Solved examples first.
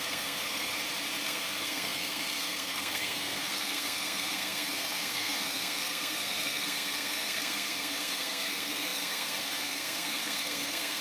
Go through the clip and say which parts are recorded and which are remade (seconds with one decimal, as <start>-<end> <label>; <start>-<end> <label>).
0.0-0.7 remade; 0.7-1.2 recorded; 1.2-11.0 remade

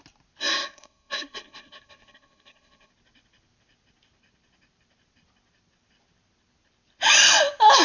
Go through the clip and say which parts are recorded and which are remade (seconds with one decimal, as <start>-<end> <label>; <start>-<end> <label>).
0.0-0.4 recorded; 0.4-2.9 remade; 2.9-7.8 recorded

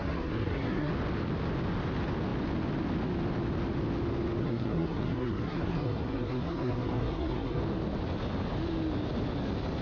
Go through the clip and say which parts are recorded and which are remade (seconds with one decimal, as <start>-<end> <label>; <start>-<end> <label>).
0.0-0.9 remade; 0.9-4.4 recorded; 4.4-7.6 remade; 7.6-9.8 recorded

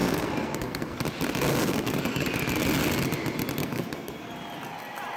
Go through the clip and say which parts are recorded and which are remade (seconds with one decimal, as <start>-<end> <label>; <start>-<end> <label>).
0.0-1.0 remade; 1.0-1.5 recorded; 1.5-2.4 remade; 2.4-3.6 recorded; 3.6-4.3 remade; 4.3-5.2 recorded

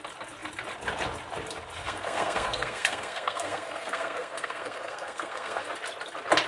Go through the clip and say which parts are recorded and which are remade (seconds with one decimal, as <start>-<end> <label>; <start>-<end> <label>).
0.0-1.8 recorded; 1.8-5.7 remade; 5.7-6.5 recorded

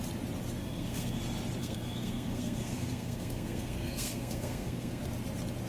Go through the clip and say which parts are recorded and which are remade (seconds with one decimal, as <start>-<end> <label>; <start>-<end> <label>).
0.0-0.6 recorded; 0.6-1.2 remade; 1.2-1.6 recorded; 1.6-5.0 remade; 5.0-5.7 recorded

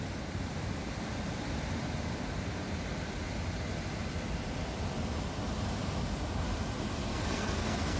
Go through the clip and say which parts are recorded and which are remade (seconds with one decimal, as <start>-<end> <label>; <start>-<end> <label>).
0.0-7.1 recorded; 7.1-8.0 remade

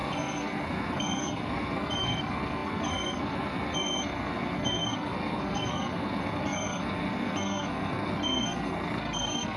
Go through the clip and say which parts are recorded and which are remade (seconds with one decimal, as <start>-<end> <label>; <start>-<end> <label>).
0.0-9.6 remade